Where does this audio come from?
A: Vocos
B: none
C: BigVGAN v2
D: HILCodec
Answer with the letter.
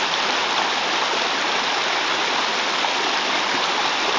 B